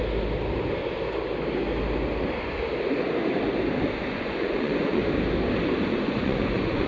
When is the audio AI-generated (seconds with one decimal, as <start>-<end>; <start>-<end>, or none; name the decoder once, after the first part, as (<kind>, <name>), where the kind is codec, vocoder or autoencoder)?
4.1-5.0 (vocoder, Vocos); 5.8-6.9